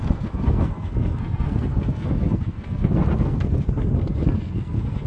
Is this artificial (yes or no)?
yes